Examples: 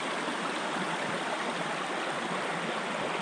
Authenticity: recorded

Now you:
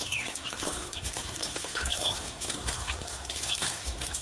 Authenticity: remade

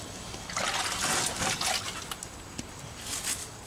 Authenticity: recorded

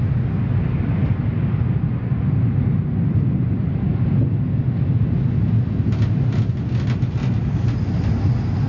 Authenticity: recorded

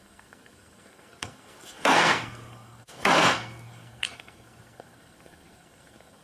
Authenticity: remade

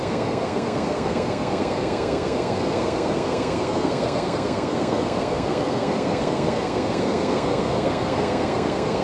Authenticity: remade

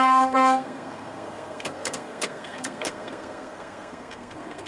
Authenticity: remade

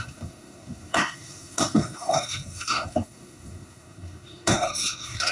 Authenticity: remade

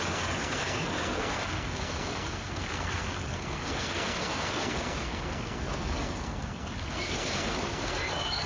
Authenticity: remade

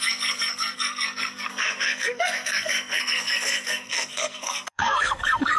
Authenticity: remade